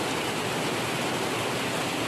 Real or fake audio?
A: real